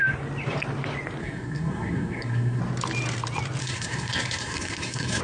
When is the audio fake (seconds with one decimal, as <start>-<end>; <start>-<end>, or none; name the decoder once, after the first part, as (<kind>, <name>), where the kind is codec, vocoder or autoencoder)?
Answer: 1.2-2.6 (codec, SNAC); 3.6-5.2